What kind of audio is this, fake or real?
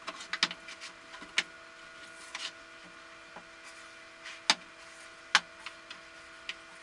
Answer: real